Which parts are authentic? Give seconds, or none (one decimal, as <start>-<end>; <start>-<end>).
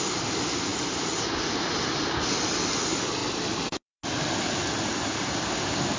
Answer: 0.0-6.0